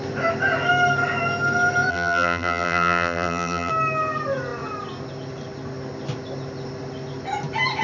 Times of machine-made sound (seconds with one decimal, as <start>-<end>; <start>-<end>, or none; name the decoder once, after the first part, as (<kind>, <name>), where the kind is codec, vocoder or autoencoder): 1.9-3.7 (vocoder, BigVGAN v2)